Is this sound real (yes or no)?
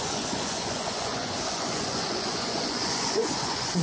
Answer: no